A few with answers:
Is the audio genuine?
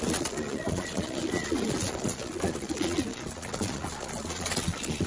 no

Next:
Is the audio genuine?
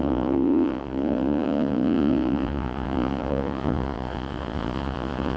no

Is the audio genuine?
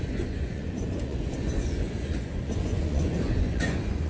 no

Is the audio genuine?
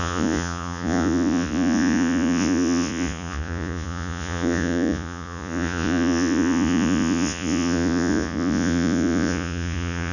no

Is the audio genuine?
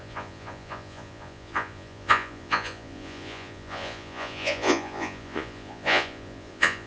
no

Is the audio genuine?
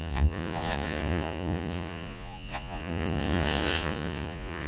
no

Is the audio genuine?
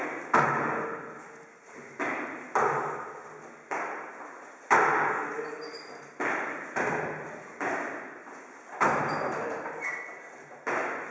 yes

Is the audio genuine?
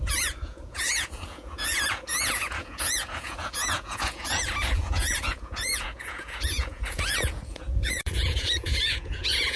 no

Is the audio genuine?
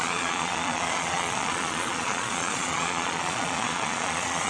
no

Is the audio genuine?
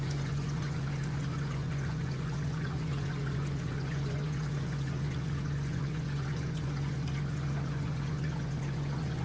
no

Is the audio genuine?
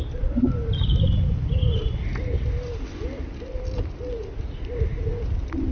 yes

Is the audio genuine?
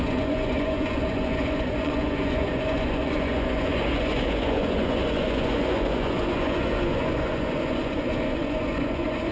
no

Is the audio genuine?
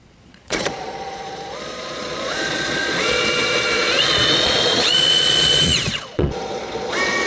no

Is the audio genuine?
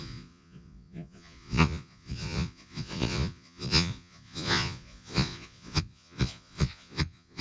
no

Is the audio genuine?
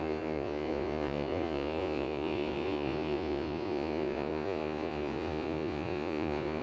no